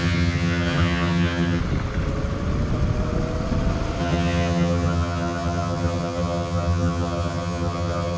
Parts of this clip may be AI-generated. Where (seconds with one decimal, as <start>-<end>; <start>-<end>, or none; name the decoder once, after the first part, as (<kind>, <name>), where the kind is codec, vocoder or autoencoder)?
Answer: 0.0-1.6 (vocoder, HiFi-GAN); 4.0-8.2